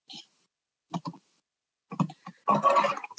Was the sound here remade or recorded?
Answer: recorded